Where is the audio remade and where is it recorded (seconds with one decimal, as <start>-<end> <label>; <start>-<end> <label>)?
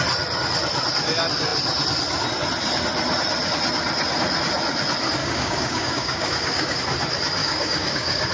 0.0-5.2 recorded; 5.2-6.8 remade; 6.8-7.4 recorded; 7.4-8.3 remade